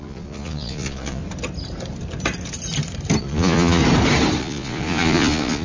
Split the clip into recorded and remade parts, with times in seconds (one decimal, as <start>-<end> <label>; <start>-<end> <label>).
0.0-1.2 remade; 1.2-3.2 recorded; 3.2-3.8 remade; 3.8-4.4 recorded; 4.4-5.6 remade